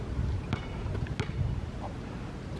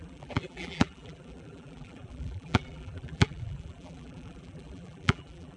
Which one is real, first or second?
first